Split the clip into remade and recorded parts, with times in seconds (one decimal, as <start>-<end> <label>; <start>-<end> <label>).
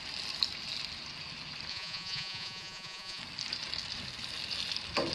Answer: 0.0-1.7 recorded; 1.7-3.2 remade; 3.2-5.1 recorded